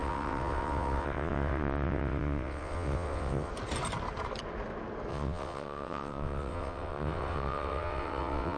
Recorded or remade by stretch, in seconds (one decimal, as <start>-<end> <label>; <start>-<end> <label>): 0.0-3.5 remade; 3.5-5.1 recorded; 5.1-8.6 remade